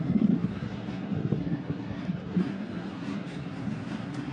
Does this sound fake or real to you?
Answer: fake